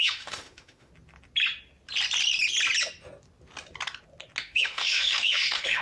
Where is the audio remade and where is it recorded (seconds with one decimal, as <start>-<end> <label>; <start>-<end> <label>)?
0.0-0.9 remade; 0.9-4.4 recorded; 4.4-5.8 remade